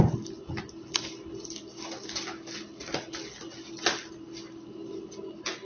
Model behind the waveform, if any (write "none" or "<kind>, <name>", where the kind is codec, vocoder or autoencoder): none